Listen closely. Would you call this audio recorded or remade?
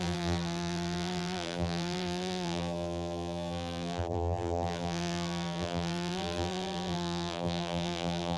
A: remade